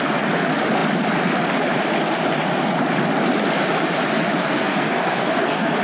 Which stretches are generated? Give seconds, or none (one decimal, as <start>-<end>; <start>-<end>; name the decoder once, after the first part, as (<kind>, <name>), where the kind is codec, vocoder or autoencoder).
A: 4.4-5.8 (codec, SNAC)